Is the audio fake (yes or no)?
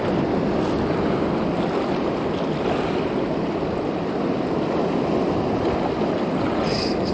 no